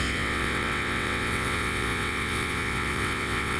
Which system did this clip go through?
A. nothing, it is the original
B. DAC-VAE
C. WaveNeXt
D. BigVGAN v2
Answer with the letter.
C